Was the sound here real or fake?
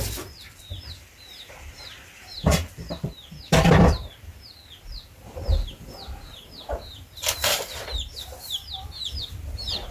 fake